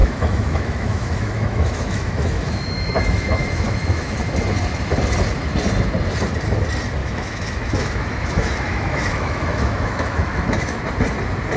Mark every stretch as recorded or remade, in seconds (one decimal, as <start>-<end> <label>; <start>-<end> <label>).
0.0-4.2 remade; 4.2-7.0 recorded; 7.0-10.8 remade; 10.8-11.6 recorded